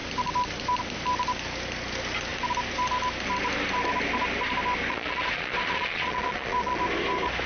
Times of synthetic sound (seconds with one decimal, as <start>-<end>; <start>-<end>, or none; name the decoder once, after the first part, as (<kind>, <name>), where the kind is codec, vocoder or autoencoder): 4.9-6.8 (vocoder, Vocos)